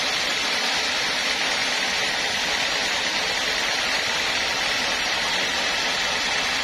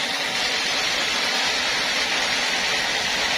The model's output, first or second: first